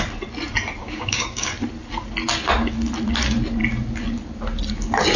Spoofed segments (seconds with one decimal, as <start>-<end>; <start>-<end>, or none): 0.8-1.5

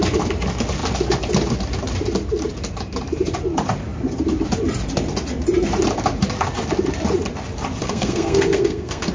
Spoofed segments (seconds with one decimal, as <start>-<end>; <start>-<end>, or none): 7.8-9.1

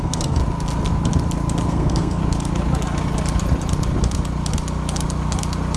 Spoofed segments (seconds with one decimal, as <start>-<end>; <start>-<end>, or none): 0.0-0.4; 1.7-2.2

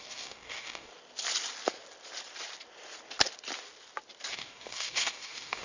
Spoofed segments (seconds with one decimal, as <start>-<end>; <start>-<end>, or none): 0.0-0.9; 4.3-5.6